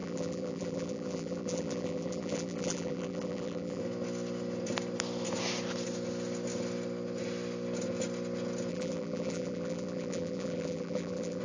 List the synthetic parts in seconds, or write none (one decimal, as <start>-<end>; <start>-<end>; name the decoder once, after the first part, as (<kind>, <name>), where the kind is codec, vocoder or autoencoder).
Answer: 0.0-3.8 (vocoder, BigVGAN v2); 8.7-11.4